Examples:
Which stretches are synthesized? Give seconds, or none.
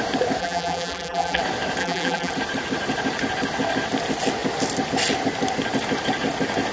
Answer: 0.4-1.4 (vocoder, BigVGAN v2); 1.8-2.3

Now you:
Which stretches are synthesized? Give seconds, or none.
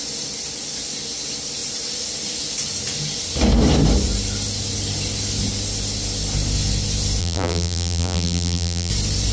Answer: 7.2-8.9 (vocoder, BigVGAN v2)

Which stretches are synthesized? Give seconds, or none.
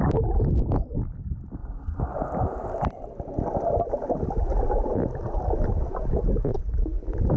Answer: 6.5-7.4 (vocoder, BigVGAN v2)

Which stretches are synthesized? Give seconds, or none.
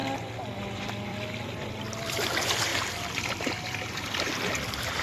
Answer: 1.1-2.3 (vocoder, BigVGAN v2); 2.7-4.3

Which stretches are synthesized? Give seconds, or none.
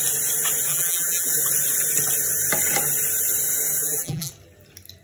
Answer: 0.7-1.4 (vocoder, BigVGAN v2); 3.8-4.3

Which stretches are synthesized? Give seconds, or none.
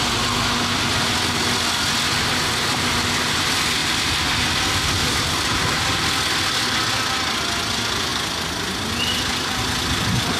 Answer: 3.8-4.3 (vocoder, BigVGAN v2); 5.0-5.8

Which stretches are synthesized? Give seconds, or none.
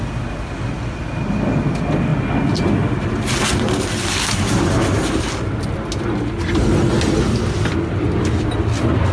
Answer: none